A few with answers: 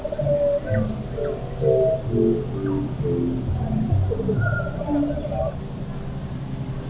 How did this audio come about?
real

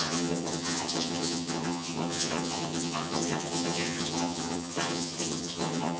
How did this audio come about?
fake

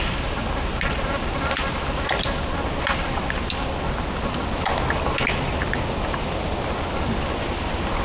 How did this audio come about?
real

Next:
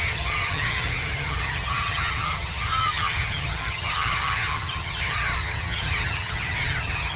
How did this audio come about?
fake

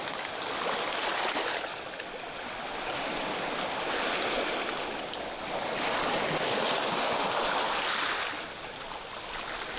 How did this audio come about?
real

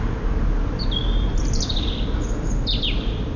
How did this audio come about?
real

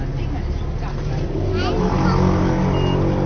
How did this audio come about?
real